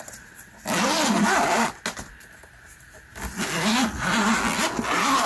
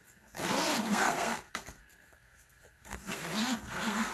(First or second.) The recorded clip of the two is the first